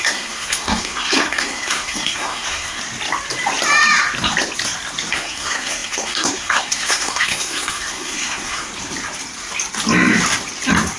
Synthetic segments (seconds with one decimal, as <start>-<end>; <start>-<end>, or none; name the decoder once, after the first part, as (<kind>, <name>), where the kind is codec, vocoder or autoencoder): 0.0-2.8 (codec, SNAC); 5.1-8.7